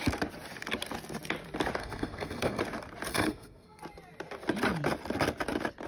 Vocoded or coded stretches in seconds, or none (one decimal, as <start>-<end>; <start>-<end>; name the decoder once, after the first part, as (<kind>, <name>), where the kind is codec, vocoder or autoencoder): 1.8-2.6 (codec, SNAC); 3.1-3.8